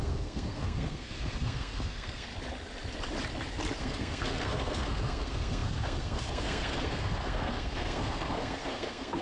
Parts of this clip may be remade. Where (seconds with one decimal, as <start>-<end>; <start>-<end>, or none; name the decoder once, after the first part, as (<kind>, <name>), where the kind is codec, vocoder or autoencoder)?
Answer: 0.0-2.3 (codec, SNAC); 3.8-9.2

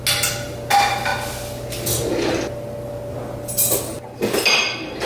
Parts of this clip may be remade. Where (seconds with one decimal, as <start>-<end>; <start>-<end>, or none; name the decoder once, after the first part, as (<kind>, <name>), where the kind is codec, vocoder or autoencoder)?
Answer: none

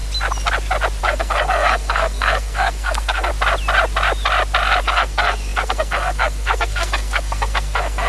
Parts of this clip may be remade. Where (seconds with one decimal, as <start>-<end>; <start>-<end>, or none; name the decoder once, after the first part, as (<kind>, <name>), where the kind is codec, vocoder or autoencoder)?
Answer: 1.0-3.3 (codec, SNAC); 4.8-8.1

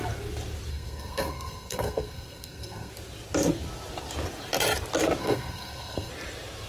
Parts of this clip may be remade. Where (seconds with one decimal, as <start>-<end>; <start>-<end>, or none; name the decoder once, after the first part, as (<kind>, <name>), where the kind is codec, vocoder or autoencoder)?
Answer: 0.7-2.9 (codec, SNAC); 5.2-6.1

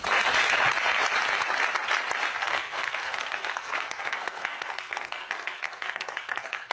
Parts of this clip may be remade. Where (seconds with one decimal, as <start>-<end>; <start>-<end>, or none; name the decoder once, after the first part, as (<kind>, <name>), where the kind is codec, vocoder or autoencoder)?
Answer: 2.4-6.7 (codec, SNAC)